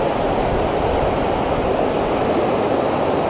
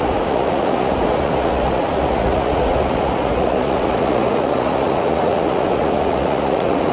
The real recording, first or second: first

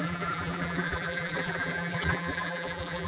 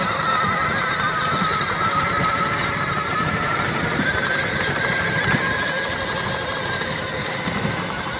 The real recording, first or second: second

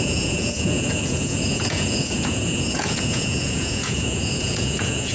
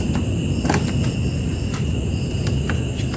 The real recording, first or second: second